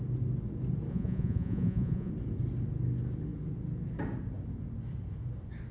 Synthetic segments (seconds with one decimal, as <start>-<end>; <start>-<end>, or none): 0.9-2.1